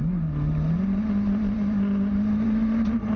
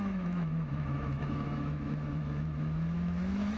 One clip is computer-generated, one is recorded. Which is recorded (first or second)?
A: first